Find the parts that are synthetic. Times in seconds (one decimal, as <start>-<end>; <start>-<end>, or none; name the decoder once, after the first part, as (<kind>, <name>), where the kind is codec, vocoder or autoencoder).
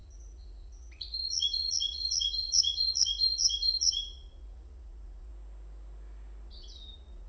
0.0-5.3 (vocoder, Vocos); 6.5-7.3